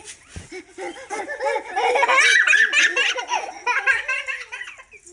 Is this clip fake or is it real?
real